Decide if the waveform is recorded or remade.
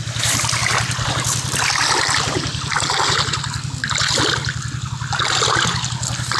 recorded